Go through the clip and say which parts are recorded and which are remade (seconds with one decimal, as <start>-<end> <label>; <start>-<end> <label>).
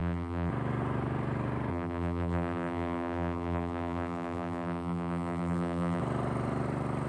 0.0-0.5 remade; 0.5-1.7 recorded; 1.7-6.0 remade; 6.0-7.1 recorded